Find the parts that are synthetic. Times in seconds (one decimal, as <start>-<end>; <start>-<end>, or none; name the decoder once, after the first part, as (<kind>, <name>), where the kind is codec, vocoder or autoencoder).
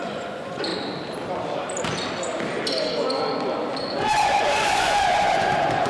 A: 0.0-0.7 (vocoder, Vocos); 3.8-5.9